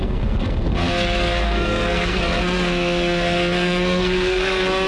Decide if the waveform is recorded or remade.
remade